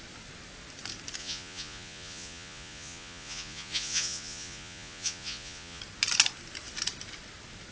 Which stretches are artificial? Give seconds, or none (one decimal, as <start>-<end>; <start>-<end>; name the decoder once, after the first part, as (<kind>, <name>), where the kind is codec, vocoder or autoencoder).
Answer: 1.2-5.8 (vocoder, Vocos)